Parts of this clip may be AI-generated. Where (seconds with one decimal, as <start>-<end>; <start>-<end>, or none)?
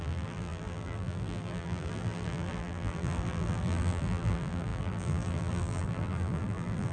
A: 0.0-6.9